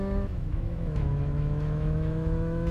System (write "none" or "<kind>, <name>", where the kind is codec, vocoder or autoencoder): autoencoder, DAC-VAE